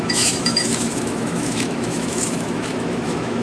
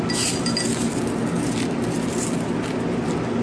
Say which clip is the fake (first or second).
first